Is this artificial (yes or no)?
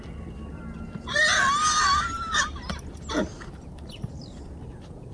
no